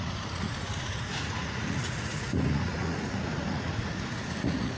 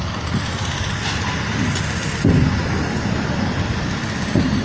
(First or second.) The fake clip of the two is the first